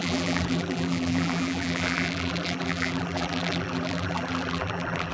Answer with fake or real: fake